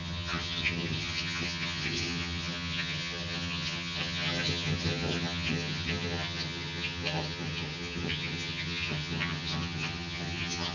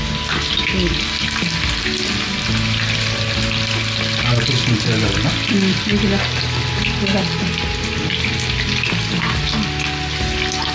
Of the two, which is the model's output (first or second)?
first